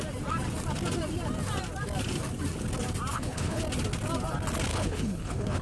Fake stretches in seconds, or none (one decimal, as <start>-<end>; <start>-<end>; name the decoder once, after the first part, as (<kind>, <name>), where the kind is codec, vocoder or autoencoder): 3.1-3.6 (codec, HILCodec); 4.7-5.6